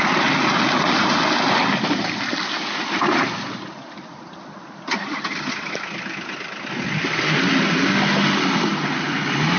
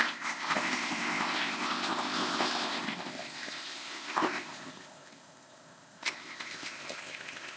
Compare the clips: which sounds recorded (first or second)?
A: first